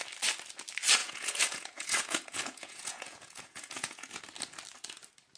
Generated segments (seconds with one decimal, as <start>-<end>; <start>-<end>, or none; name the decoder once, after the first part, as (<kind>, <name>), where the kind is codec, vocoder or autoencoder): 1.0-4.2 (vocoder, Vocos)